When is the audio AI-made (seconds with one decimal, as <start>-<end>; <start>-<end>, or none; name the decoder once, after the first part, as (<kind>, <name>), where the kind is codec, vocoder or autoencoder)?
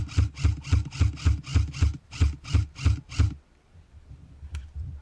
none